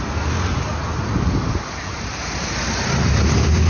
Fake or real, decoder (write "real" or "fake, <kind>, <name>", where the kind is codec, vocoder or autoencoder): real